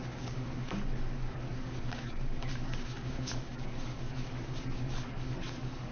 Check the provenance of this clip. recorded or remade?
remade